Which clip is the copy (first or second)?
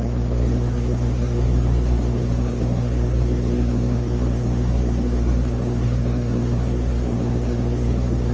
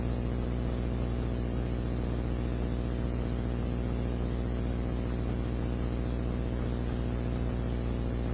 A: first